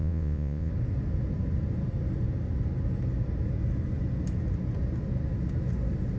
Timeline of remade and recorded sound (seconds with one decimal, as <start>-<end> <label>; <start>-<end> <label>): 0.0-0.7 remade; 0.7-6.2 recorded